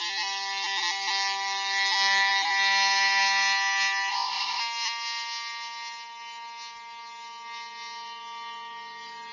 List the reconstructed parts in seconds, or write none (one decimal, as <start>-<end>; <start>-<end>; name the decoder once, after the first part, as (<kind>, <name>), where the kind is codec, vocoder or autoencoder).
4.1-4.6 (codec, ZipCodec)